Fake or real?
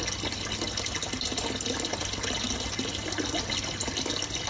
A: real